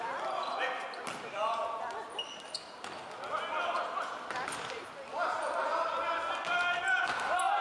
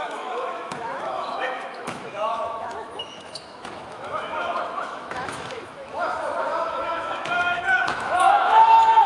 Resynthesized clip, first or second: second